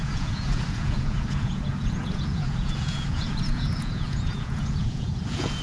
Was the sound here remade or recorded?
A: remade